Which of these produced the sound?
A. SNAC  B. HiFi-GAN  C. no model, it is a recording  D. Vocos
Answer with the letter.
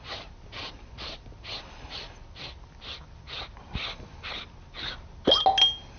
C